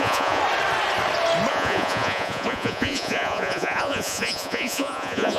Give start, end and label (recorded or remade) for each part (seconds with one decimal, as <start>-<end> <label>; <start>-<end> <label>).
0.0-0.4 remade; 0.4-1.5 recorded; 1.5-5.4 remade